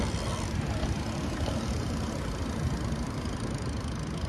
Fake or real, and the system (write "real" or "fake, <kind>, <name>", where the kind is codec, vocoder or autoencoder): real